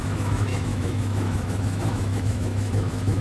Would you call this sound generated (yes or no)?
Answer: yes